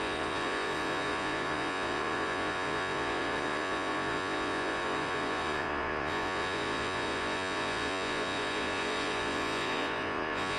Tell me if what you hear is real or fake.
fake